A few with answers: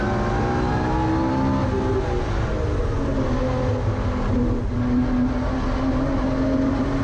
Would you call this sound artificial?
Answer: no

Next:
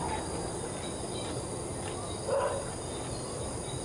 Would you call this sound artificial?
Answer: no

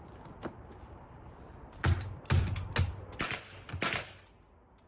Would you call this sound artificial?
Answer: no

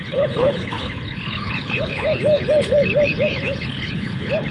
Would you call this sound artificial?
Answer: yes